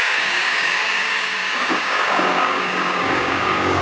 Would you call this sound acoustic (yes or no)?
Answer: no